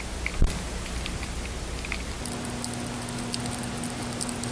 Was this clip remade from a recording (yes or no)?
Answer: no